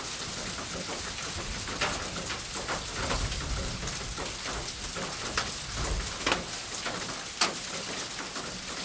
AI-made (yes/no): no